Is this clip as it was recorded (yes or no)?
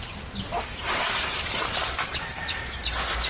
yes